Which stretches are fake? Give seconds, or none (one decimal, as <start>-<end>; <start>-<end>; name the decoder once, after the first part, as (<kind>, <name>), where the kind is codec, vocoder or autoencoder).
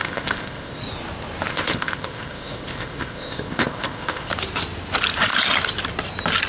0.0-0.8 (codec, ZipCodec); 1.5-4.3